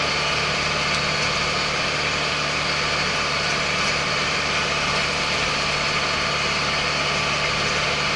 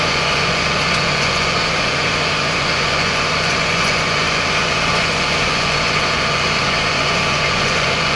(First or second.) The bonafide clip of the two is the first